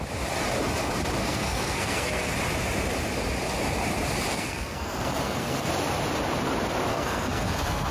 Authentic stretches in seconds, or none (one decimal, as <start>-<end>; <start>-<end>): 0.0-1.2; 2.3-4.3; 5.7-6.9